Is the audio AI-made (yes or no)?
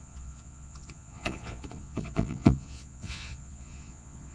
yes